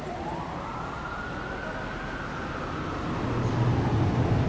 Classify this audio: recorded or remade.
recorded